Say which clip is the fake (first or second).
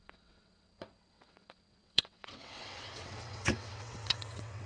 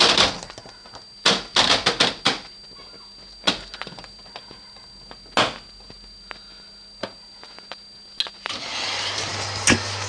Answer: first